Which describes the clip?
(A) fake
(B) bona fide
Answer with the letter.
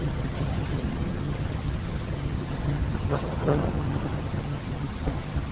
A